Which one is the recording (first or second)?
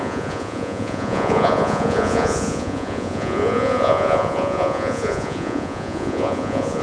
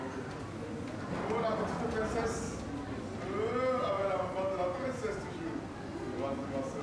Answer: second